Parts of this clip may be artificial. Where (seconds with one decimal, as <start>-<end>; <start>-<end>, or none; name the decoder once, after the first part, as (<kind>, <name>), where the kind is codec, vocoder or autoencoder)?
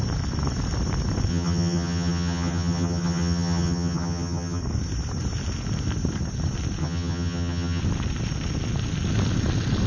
1.3-4.6 (vocoder, HiFi-GAN); 6.8-7.8